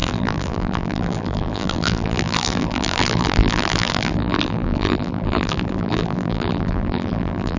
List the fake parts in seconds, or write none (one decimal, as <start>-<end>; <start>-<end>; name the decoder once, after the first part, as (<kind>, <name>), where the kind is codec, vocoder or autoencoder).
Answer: 0.0-7.6 (vocoder, BigVGAN v2)